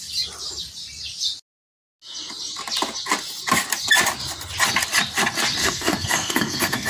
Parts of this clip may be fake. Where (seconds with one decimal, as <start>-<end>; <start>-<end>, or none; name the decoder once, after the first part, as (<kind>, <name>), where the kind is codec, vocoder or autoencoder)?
5.6-6.9 (codec, SNAC)